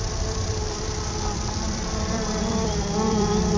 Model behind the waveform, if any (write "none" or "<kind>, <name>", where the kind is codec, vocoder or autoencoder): vocoder, BigVGAN v2